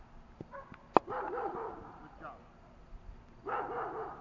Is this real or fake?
real